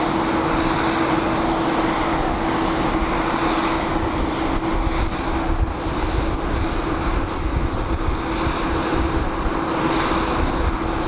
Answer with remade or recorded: recorded